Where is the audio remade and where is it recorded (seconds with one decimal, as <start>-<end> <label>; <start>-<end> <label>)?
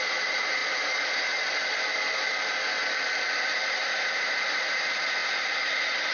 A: 0.0-0.6 remade; 0.6-1.2 recorded; 1.2-6.1 remade